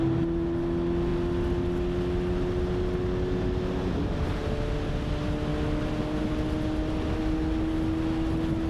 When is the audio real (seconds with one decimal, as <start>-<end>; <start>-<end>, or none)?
0.0-8.7

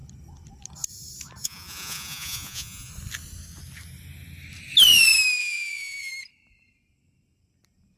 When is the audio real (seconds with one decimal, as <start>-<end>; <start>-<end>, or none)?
0.0-1.4; 2.9-5.4; 6.1-8.0

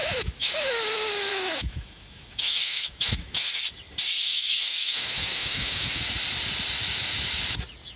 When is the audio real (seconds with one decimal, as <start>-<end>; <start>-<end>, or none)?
0.7-1.3; 3.6-4.2; 6.0-8.0

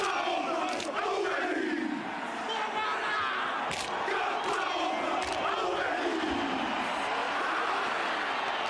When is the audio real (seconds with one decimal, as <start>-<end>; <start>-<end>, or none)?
0.0-7.2; 7.9-8.7